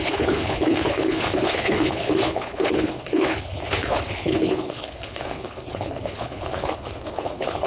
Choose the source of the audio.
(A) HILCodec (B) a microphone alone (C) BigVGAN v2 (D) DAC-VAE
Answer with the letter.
A